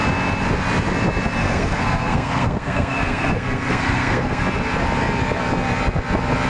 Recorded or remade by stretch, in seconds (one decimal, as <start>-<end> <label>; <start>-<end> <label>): 0.0-1.4 recorded; 1.4-4.4 remade; 4.4-6.5 recorded